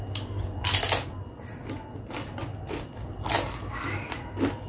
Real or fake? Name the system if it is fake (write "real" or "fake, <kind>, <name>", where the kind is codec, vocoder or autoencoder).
real